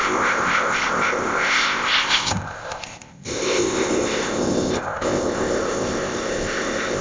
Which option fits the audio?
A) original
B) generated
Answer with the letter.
B